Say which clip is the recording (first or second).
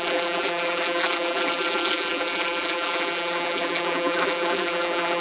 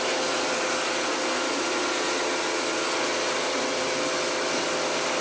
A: second